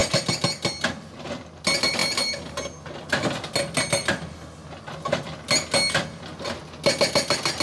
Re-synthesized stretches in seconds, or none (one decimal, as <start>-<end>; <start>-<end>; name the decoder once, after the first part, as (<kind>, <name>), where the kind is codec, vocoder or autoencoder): none